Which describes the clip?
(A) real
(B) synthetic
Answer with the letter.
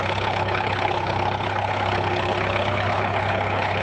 B